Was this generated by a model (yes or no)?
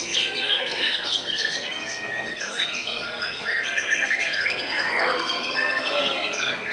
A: yes